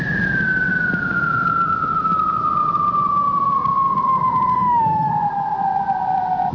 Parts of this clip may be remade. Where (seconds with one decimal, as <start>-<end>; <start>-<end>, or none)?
4.5-5.1